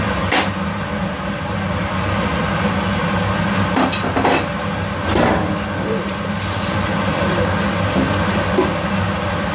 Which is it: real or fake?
real